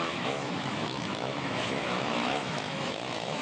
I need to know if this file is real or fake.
fake